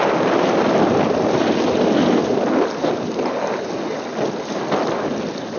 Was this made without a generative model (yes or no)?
yes